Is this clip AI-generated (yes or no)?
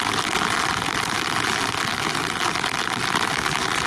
no